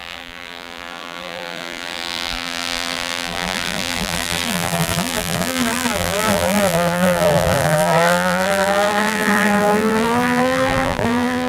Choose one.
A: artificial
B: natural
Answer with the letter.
A